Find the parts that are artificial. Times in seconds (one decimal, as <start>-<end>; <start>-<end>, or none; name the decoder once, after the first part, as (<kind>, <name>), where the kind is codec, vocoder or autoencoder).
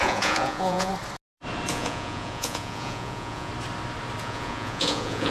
0.0-0.9 (vocoder, Vocos); 1.7-3.5; 4.2-5.3